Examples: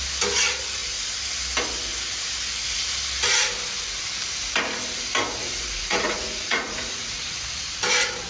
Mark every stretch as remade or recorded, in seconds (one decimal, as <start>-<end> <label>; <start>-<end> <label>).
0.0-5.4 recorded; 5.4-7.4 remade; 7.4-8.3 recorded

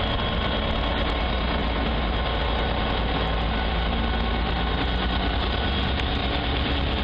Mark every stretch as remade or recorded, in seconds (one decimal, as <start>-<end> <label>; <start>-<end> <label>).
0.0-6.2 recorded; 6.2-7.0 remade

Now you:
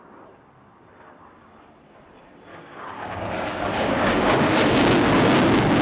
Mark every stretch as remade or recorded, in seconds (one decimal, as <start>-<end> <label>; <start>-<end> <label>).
0.0-2.5 recorded; 2.5-4.9 remade; 4.9-5.8 recorded

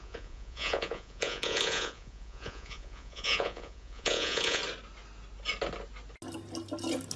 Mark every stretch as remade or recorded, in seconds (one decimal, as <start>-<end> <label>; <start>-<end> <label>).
0.0-4.6 remade; 4.6-7.2 recorded

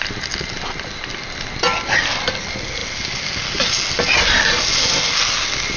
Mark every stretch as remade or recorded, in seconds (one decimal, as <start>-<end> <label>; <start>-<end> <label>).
0.0-5.8 recorded

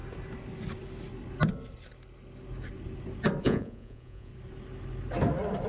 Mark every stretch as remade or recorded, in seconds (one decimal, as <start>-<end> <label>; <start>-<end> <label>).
0.0-3.4 recorded; 3.4-4.3 remade; 4.3-5.7 recorded

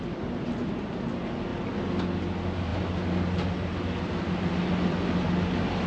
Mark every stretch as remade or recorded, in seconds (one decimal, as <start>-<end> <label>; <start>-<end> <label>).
0.0-5.9 recorded